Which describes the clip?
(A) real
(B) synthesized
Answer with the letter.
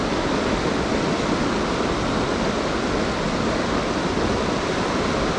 A